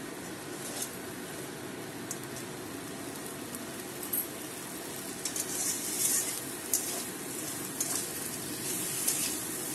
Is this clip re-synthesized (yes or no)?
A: no